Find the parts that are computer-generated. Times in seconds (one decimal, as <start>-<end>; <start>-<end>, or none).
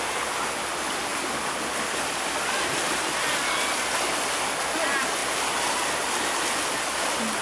none